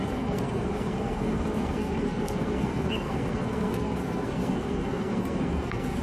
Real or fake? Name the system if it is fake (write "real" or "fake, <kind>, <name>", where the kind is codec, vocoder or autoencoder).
fake, codec, SNAC